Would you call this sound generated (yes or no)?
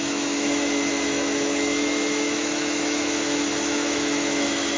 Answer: yes